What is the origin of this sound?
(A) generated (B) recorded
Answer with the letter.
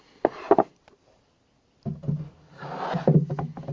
B